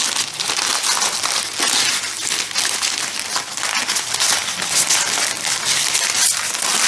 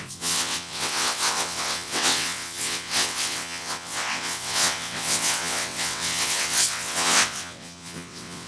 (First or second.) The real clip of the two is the first